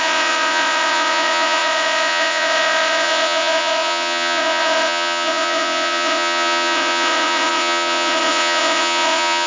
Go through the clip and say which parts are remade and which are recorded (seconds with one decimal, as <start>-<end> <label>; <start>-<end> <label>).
0.0-9.5 remade